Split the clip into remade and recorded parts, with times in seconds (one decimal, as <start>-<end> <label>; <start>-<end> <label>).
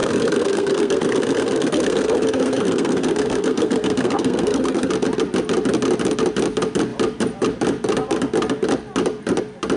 0.0-4.9 remade; 4.9-9.8 recorded